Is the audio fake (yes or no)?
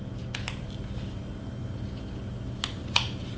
no